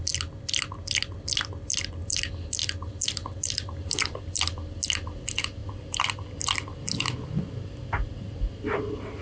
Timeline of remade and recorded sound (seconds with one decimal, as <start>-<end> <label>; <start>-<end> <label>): 0.0-2.6 recorded; 2.6-4.4 remade; 4.4-9.2 recorded

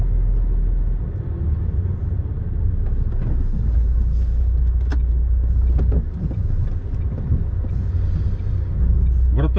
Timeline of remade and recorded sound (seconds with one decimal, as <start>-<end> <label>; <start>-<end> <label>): 0.0-9.6 recorded

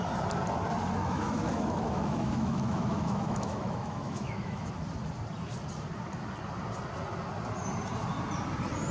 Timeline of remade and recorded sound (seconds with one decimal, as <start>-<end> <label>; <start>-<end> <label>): 0.0-1.0 recorded; 1.0-4.7 remade; 4.7-8.9 recorded

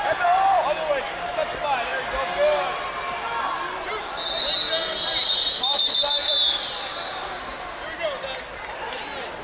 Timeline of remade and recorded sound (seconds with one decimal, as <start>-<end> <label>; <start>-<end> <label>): 0.0-5.2 recorded; 5.2-7.4 remade; 7.4-9.4 recorded